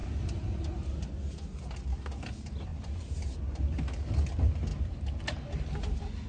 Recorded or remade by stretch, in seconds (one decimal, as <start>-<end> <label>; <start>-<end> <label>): 0.0-2.7 recorded; 2.7-3.3 remade; 3.3-6.3 recorded